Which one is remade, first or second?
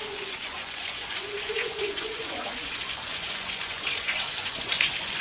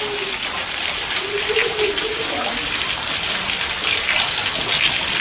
first